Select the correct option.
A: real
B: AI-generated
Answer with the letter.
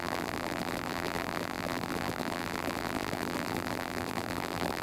B